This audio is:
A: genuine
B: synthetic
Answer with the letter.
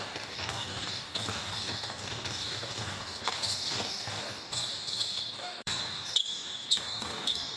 B